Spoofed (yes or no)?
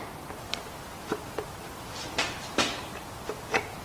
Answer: no